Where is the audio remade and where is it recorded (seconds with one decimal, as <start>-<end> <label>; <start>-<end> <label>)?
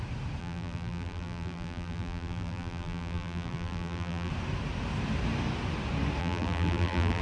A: 0.0-0.4 recorded; 0.4-4.3 remade; 4.3-6.2 recorded; 6.2-7.2 remade